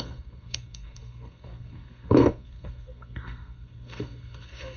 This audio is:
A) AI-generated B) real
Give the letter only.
A